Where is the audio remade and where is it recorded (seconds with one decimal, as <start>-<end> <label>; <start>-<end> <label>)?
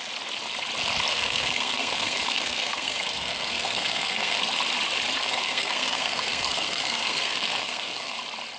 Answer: 0.0-1.1 recorded; 1.1-4.4 remade; 4.4-5.2 recorded; 5.2-8.2 remade; 8.2-8.6 recorded